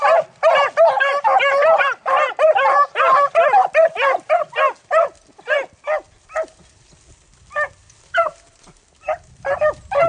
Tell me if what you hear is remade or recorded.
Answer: recorded